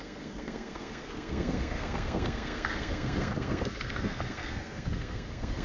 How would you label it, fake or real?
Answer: fake